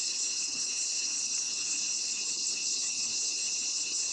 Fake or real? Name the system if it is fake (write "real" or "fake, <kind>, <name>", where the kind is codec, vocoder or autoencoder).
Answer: fake, codec, HILCodec